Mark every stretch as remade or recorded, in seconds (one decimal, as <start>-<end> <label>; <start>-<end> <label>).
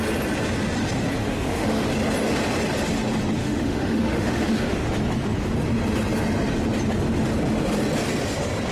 0.0-1.2 recorded; 1.2-1.9 remade; 1.9-3.4 recorded; 3.4-4.9 remade; 4.9-8.7 recorded